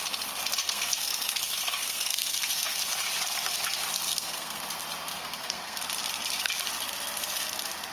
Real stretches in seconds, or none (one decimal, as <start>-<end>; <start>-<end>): 0.0-0.6; 2.8-4.1; 4.6-5.1; 5.8-7.9